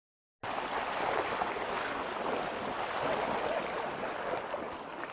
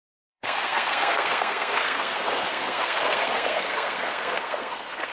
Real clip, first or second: first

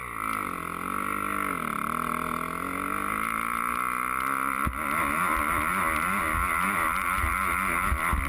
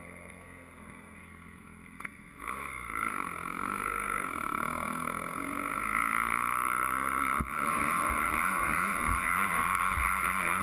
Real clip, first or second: first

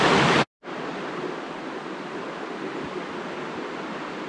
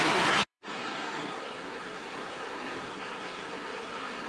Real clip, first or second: first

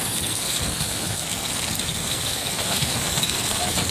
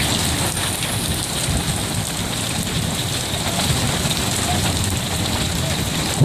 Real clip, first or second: second